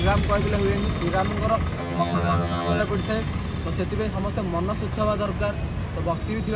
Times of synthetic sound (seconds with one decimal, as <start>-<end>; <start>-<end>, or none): 1.8-2.8

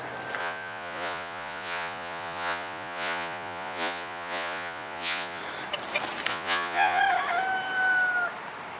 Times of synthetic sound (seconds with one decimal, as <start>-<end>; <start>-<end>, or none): 0.4-5.4; 6.3-7.0

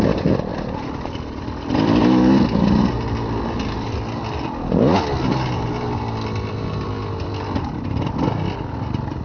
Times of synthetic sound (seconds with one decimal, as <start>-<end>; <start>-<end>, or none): none

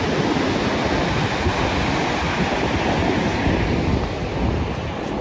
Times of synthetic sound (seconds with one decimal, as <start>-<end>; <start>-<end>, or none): none

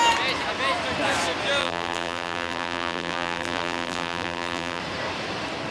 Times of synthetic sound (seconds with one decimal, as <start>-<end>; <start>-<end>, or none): 1.6-4.8

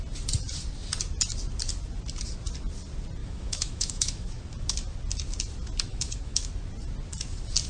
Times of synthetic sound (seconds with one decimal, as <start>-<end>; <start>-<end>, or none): 3.2-4.4; 5.9-6.5